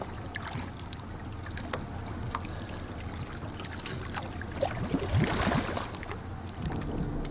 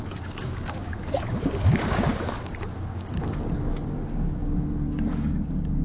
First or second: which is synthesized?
second